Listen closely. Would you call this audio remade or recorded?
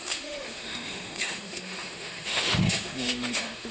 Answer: remade